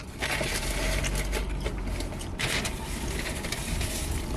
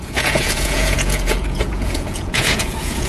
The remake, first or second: second